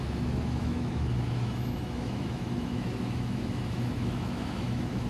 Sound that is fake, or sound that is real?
fake